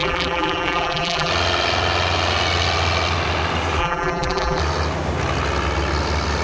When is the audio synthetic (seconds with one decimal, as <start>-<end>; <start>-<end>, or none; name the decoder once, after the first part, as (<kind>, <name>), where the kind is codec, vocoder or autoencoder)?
0.0-1.3 (vocoder, BigVGAN v2); 3.8-4.6